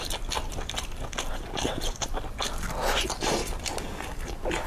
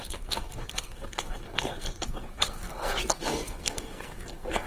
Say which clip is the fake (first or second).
second